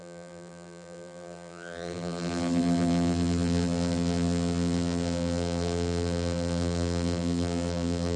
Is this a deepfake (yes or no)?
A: yes